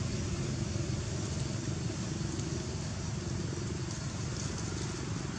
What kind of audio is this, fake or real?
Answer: real